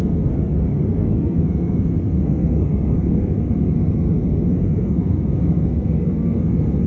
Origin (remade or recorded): remade